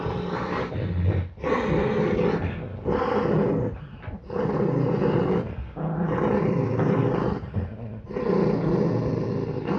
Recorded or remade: recorded